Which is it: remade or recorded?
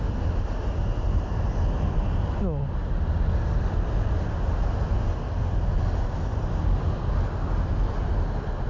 recorded